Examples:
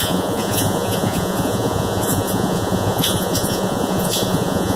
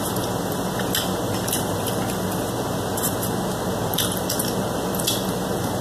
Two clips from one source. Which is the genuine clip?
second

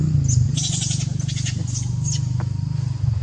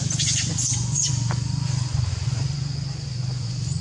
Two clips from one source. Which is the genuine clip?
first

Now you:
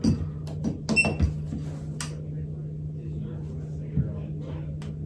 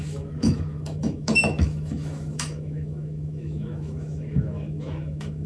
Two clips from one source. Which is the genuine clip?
first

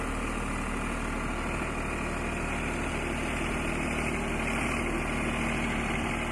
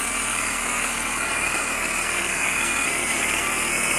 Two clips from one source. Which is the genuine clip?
first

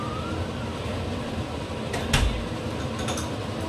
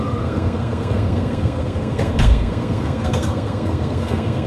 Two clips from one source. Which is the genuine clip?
first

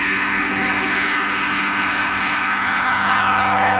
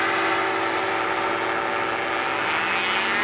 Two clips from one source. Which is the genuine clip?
second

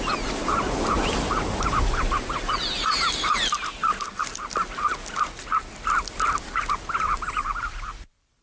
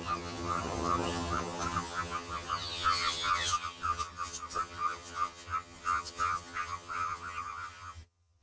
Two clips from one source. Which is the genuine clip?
first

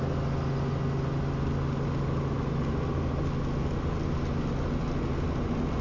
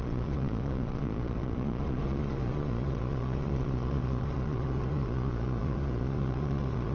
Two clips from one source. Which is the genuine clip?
first